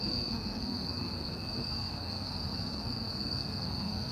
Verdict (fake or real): fake